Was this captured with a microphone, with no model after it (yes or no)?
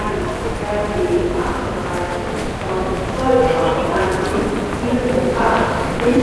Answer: yes